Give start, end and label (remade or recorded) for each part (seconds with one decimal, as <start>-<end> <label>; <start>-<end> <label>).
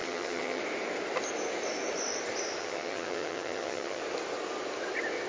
0.0-0.6 remade; 0.6-2.6 recorded; 2.6-4.0 remade; 4.0-5.3 recorded